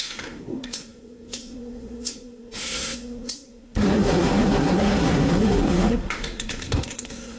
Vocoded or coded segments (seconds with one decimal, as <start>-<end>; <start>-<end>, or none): 0.0-7.4